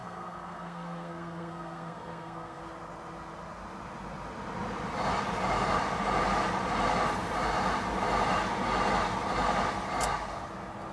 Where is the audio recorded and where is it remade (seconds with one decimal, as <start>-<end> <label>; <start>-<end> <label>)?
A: 0.0-2.6 remade; 2.6-10.9 recorded